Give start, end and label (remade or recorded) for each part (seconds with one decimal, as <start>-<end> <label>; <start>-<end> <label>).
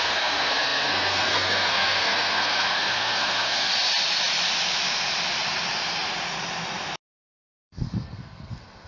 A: 0.0-3.7 remade; 3.7-7.1 recorded; 7.1-8.9 remade